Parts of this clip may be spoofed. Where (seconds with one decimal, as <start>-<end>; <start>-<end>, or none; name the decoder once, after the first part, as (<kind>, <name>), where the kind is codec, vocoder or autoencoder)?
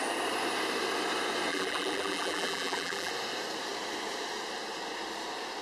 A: 1.5-3.1 (vocoder, BigVGAN v2)